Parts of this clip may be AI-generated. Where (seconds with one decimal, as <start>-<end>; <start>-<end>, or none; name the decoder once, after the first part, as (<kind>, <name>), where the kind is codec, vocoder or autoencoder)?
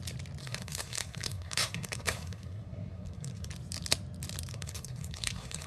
0.4-3.5 (codec, SNAC); 4.5-5.7